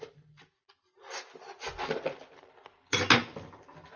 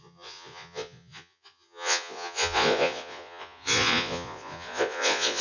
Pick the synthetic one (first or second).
second